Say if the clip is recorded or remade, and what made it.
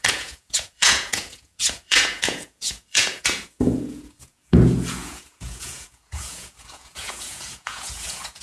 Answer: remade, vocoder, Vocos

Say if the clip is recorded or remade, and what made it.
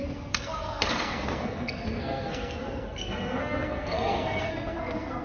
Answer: remade, codec, SNAC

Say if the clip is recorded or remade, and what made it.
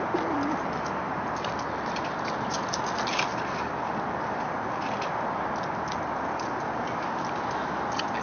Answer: recorded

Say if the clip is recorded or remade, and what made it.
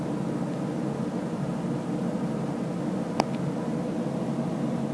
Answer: recorded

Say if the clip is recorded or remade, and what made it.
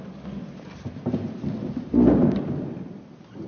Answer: recorded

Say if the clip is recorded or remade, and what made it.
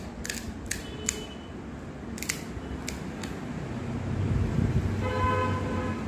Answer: recorded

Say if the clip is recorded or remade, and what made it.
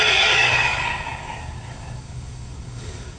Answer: remade, codec, DAC